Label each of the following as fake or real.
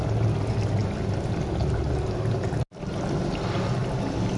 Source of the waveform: real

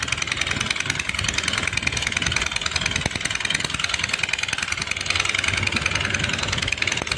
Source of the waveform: real